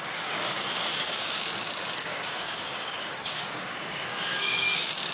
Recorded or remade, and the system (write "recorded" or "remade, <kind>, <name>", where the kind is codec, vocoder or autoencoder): remade, codec, DAC